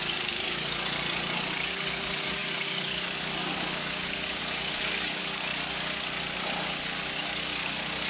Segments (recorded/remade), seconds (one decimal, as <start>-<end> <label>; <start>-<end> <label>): 0.0-1.0 remade; 1.0-1.6 recorded; 1.6-5.5 remade; 5.5-6.7 recorded; 6.7-8.1 remade